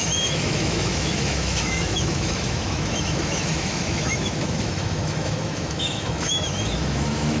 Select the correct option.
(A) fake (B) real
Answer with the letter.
A